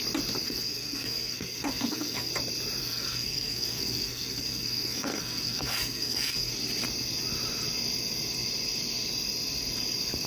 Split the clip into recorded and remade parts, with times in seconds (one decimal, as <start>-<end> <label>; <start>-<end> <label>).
0.0-0.4 recorded; 0.4-2.3 remade; 2.3-2.8 recorded; 2.8-6.5 remade; 6.5-10.3 recorded